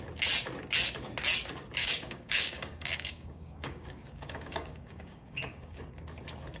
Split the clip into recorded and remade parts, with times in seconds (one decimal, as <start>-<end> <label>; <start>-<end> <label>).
0.0-1.8 recorded; 1.8-5.8 remade; 5.8-6.6 recorded